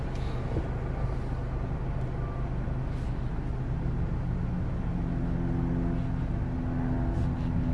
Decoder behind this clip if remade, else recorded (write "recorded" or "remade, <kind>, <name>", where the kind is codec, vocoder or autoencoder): recorded